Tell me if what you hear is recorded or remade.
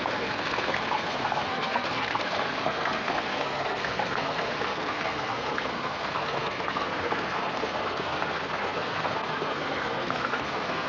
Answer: remade